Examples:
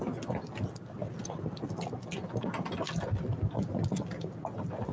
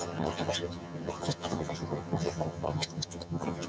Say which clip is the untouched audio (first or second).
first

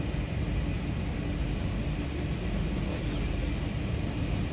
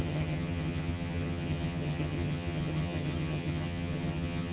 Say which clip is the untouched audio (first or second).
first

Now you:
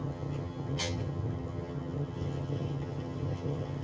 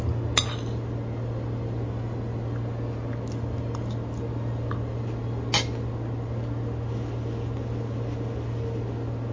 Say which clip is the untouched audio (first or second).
second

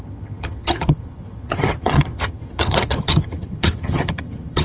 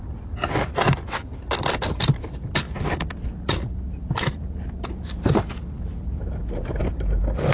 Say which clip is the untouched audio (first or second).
second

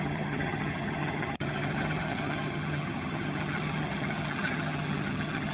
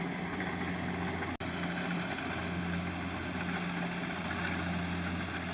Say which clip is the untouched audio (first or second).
second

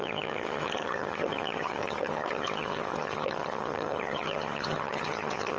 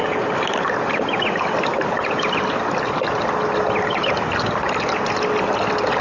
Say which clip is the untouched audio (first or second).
second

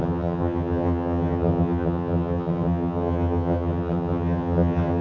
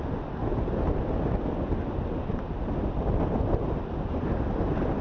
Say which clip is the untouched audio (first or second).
second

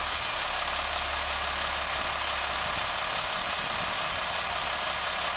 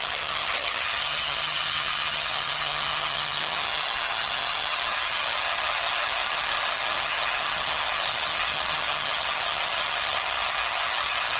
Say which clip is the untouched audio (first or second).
first